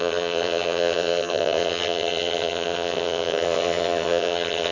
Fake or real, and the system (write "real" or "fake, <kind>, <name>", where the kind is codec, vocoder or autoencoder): fake, vocoder, HiFi-GAN